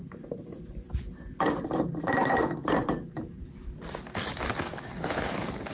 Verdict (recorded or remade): remade